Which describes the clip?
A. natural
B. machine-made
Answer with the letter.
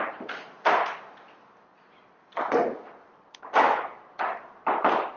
A